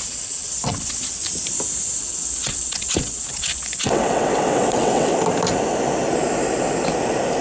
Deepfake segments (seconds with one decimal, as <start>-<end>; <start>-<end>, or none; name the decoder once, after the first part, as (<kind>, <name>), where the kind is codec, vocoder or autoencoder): 0.0-1.2 (vocoder, WaveNeXt); 2.0-5.1